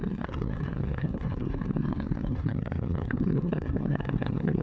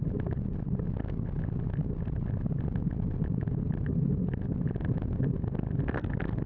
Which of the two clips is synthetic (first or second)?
first